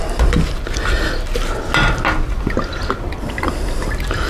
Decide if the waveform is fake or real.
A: real